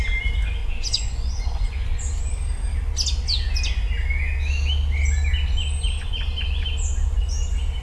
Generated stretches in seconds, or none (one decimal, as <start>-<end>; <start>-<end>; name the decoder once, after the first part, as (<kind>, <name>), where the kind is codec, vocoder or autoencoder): 0.6-2.0 (vocoder, Vocos)